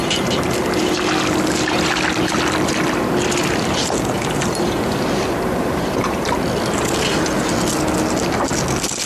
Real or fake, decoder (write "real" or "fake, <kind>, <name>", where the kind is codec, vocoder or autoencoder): real